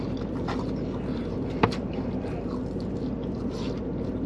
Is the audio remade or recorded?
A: recorded